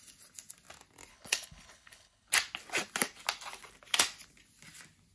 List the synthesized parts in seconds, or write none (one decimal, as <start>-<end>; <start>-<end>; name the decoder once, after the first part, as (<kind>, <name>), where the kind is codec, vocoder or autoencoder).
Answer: 1.1-2.3 (codec, HILCodec)